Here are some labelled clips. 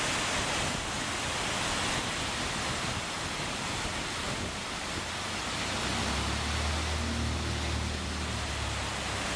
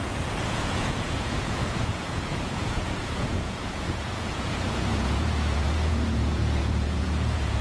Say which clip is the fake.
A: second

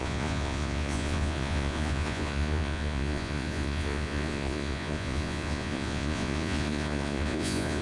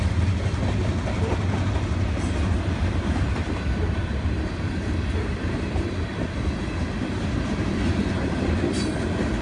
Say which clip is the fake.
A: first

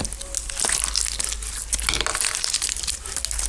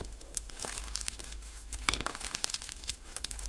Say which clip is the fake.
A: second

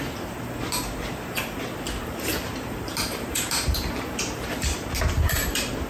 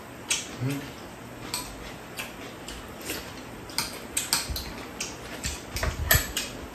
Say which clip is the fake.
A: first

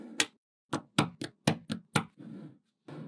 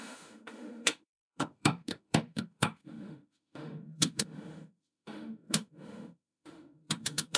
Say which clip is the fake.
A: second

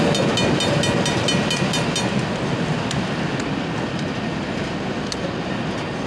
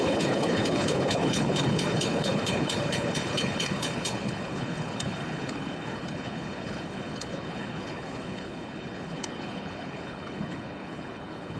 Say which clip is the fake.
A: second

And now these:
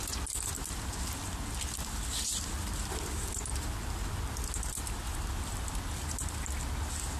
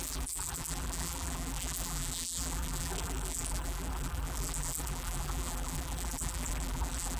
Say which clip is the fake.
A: second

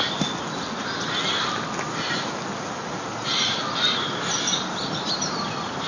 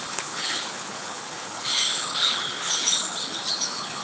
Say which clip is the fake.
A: second